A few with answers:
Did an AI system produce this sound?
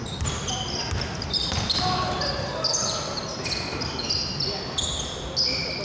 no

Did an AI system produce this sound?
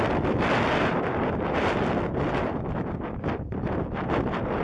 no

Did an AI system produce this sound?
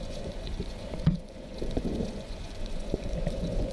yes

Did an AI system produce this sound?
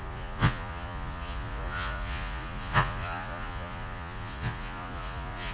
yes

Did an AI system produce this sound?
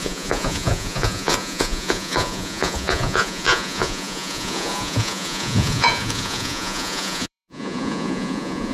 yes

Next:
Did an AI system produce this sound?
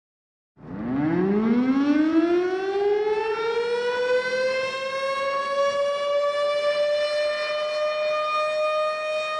no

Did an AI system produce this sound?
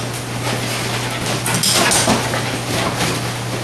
no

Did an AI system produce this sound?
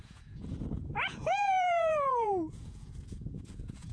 yes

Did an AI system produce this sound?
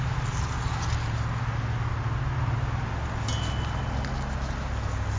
no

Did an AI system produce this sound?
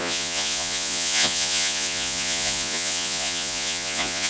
yes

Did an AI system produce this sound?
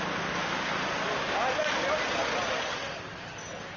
no